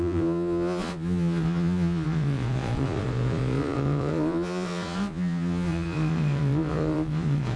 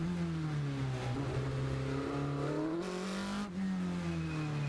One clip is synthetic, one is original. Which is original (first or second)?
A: second